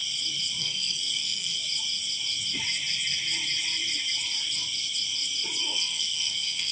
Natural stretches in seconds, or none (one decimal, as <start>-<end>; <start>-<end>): 0.0-0.6; 1.6-5.6